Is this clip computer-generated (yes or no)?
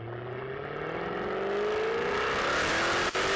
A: no